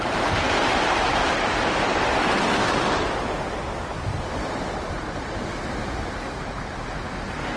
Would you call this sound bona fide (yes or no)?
yes